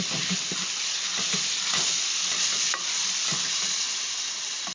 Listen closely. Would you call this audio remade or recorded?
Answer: recorded